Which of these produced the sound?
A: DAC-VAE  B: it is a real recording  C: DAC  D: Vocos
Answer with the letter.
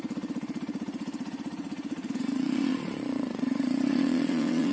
D